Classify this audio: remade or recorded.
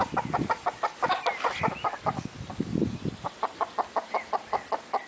recorded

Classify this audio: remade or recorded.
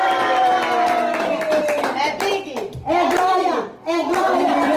remade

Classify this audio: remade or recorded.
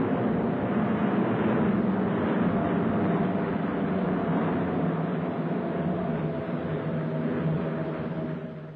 recorded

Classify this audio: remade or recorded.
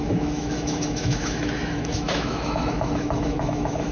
remade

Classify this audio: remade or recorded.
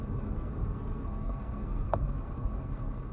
remade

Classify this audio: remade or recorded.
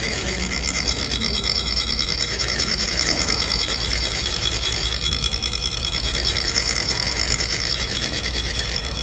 remade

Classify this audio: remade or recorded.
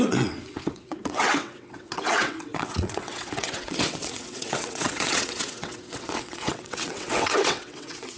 remade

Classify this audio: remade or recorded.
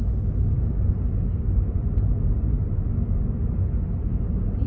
recorded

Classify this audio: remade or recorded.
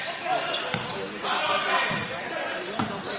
recorded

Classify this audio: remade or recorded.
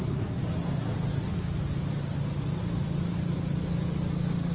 recorded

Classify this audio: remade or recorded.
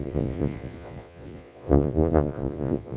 remade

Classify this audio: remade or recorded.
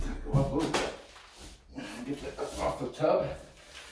recorded